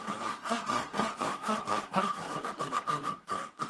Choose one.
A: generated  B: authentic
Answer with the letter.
A